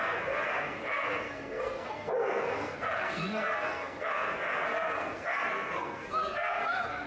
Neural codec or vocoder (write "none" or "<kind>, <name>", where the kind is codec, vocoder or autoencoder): codec, SNAC